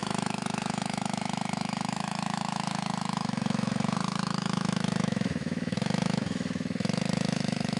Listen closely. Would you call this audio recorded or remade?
remade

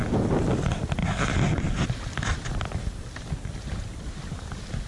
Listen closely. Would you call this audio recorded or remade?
recorded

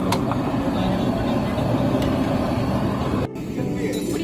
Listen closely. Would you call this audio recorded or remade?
recorded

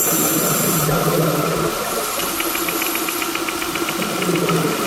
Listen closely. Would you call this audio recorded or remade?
recorded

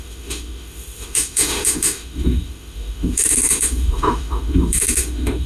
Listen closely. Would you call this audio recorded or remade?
remade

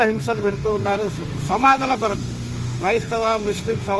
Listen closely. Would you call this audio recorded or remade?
remade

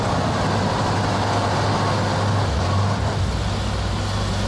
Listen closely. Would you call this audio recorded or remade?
recorded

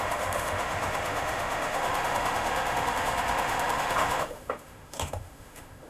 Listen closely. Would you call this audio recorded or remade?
remade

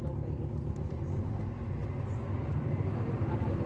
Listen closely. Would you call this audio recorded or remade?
recorded